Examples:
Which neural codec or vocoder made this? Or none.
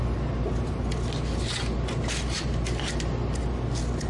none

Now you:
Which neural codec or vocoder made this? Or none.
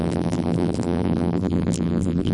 vocoder, BigVGAN v2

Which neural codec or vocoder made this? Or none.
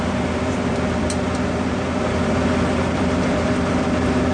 vocoder, BigVGAN v2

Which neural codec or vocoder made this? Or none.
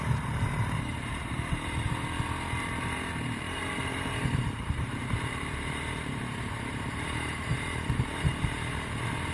vocoder, BigVGAN v2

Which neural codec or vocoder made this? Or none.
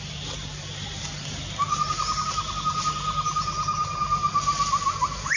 none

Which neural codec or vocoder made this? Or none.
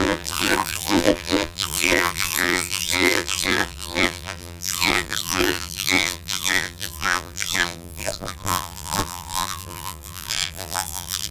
vocoder, BigVGAN v2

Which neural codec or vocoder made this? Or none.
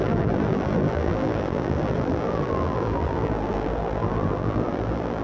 vocoder, BigVGAN v2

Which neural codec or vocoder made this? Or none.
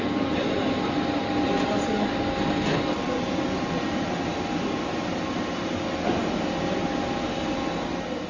none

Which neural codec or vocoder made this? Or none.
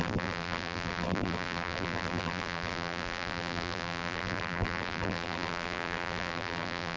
vocoder, BigVGAN v2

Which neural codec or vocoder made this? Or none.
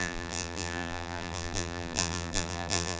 vocoder, BigVGAN v2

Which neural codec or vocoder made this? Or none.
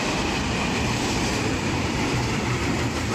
vocoder, BigVGAN v2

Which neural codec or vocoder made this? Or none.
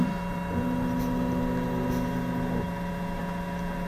none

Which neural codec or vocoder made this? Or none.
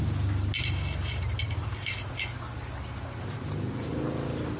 none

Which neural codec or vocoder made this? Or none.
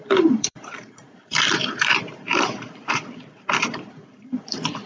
vocoder, BigVGAN v2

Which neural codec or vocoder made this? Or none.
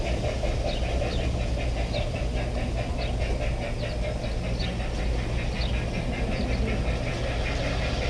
none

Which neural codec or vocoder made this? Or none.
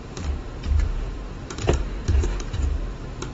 vocoder, BigVGAN v2